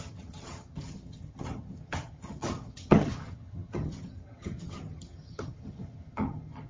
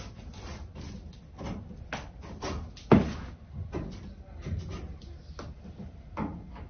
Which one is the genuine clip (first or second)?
second